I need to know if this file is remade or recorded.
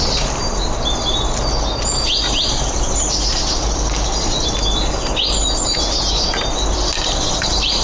recorded